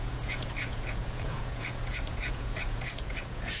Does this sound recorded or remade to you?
remade